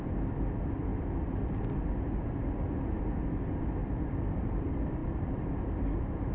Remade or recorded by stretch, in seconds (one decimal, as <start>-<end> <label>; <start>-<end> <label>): 0.0-3.8 recorded; 3.8-4.5 remade; 4.5-5.0 recorded; 5.0-6.3 remade